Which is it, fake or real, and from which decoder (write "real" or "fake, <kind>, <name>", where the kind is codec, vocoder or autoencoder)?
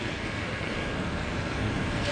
fake, codec, SNAC